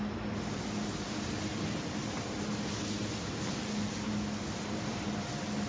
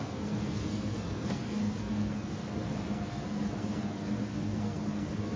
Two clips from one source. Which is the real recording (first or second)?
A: first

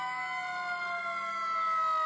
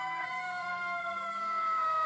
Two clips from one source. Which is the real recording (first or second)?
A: first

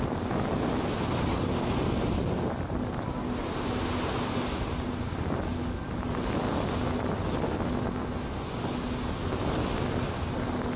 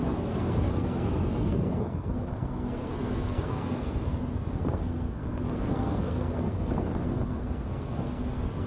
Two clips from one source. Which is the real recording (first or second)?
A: first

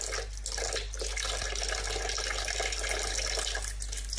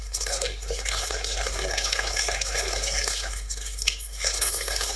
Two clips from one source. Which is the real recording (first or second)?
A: first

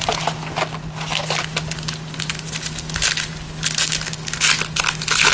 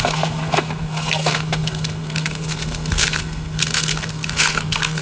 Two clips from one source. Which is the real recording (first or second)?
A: first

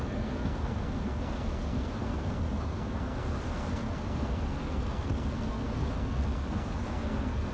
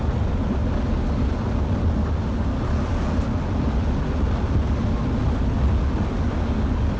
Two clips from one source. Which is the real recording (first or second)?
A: second